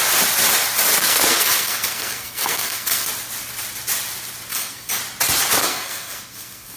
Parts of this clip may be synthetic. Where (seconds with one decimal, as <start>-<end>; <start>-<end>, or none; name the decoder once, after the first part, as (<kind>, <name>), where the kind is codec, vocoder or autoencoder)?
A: 1.0-3.1 (codec, SNAC); 4.5-5.0; 5.6-6.8